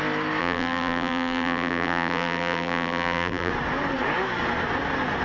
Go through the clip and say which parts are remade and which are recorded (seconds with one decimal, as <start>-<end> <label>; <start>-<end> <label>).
0.0-0.4 recorded; 0.4-3.5 remade; 3.5-5.2 recorded

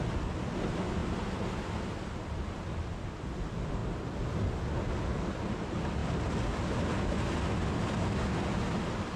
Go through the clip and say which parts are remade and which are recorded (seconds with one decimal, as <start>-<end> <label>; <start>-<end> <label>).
0.0-9.2 recorded

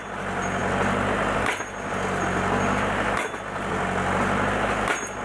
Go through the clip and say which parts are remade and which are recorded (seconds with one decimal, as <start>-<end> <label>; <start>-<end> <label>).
0.0-5.2 recorded

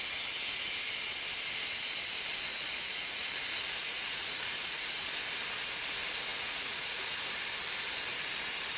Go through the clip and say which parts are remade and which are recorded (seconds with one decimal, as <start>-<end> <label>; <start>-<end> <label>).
0.0-2.5 recorded; 2.5-3.3 remade; 3.3-3.8 recorded; 3.8-5.0 remade; 5.0-6.3 recorded; 6.3-7.3 remade; 7.3-8.8 recorded